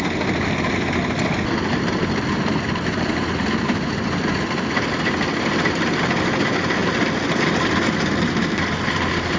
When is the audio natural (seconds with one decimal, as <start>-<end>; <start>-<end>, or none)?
0.0-9.4